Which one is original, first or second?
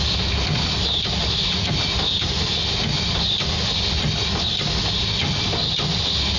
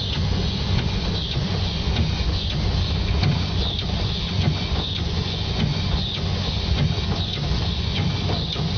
first